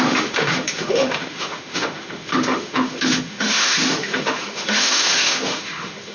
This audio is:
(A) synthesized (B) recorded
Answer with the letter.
A